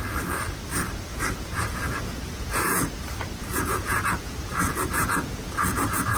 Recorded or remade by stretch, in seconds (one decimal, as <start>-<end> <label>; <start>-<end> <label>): 0.0-1.1 recorded; 1.1-2.8 remade; 2.8-3.4 recorded; 3.4-6.2 remade